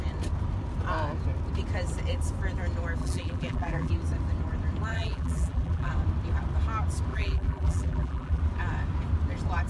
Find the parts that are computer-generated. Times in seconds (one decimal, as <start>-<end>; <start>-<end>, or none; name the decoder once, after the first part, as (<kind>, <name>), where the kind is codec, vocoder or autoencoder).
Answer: 3.0-3.9 (vocoder, BigVGAN v2); 4.9-5.9; 7.1-8.4

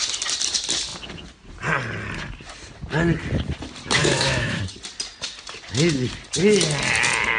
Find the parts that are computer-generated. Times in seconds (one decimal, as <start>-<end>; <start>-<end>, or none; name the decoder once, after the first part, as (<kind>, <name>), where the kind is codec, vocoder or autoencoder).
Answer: 4.0-4.6 (autoencoder, DAC-VAE)

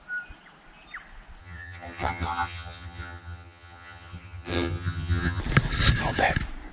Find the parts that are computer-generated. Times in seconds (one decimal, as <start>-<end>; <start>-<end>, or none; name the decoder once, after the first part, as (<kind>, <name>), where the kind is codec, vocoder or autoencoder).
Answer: 1.4-5.4 (vocoder, HiFi-GAN)

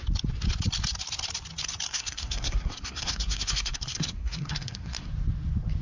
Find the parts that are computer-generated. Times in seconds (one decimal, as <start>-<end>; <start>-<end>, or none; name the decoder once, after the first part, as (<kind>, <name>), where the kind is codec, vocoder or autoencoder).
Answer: 1.9-5.1 (codec, SNAC)

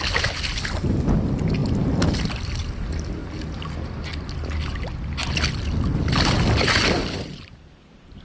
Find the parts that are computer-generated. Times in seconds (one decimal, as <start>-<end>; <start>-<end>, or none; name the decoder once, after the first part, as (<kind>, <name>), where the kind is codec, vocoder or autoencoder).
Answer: none

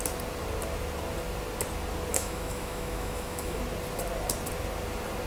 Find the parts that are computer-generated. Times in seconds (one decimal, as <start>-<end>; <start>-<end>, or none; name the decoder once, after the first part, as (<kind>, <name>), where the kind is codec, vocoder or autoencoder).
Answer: 2.1-3.6 (autoencoder, DAC-VAE)

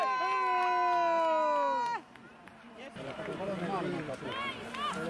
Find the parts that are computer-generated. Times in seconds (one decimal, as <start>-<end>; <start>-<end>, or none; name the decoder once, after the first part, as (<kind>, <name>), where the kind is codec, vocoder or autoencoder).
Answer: 2.5-4.2 (vocoder, BigVGAN v2)